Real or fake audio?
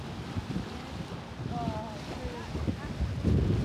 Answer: real